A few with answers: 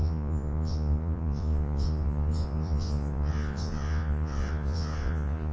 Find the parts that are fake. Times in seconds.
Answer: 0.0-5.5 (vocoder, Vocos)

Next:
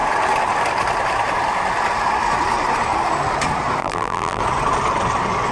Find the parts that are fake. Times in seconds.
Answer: 3.8-4.4 (vocoder, BigVGAN v2)